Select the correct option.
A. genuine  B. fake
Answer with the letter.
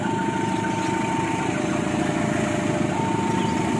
A